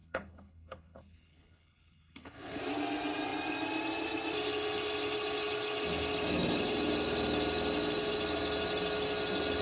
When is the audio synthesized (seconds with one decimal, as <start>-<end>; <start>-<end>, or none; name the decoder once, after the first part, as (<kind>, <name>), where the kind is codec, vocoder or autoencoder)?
0.0-2.6 (codec, HILCodec)